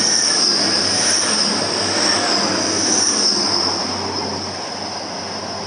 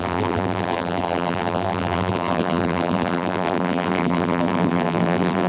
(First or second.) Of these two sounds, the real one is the first